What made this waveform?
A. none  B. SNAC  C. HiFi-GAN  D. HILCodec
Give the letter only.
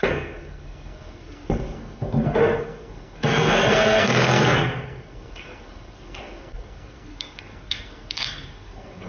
B